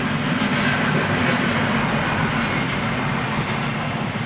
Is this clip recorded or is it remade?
recorded